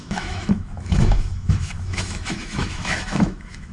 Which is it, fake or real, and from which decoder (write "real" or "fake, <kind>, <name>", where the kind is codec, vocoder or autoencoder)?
fake, autoencoder, DAC-VAE